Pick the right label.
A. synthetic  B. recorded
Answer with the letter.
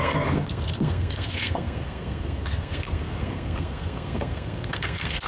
A